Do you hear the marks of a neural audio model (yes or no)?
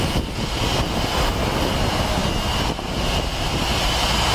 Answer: no